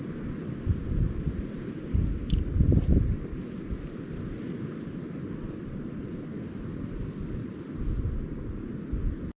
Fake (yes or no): no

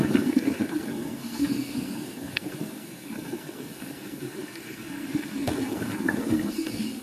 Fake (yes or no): yes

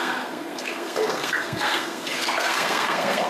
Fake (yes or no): yes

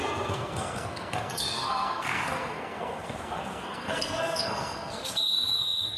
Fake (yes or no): yes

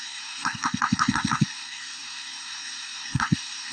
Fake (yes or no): yes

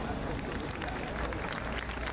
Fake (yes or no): no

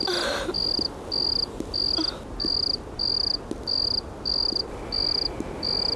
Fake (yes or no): no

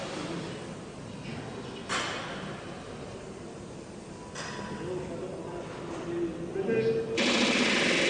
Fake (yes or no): no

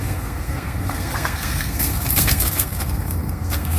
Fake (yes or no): yes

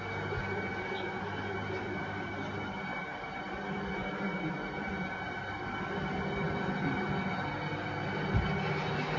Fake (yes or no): no